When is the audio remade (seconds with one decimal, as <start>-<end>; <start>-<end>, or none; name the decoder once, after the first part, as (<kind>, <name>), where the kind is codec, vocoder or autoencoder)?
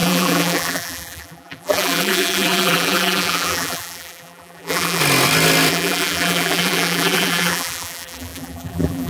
0.0-5.0 (vocoder, BigVGAN v2); 5.7-9.1